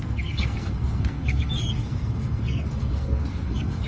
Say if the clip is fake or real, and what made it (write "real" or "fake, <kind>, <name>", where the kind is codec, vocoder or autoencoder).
fake, codec, SNAC